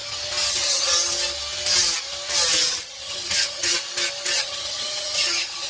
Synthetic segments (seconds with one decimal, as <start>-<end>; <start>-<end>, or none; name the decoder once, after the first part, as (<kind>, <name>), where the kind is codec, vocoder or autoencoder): 0.5-0.9 (vocoder, HiFi-GAN); 2.7-3.7; 4.4-5.7